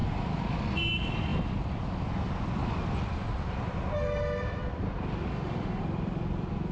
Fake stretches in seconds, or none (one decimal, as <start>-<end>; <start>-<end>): 5.3-5.8